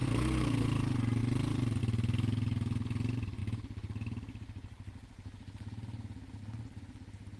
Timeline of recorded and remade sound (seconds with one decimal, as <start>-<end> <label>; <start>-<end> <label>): 0.0-0.6 remade; 0.6-7.4 recorded